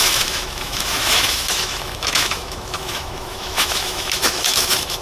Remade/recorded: remade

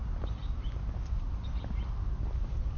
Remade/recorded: recorded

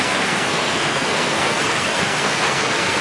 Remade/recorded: remade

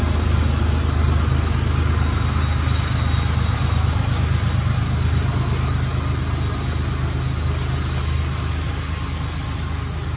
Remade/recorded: recorded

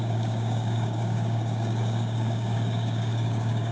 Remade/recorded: remade